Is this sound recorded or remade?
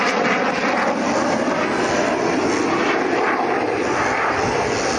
recorded